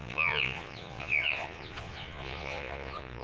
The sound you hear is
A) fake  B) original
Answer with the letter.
A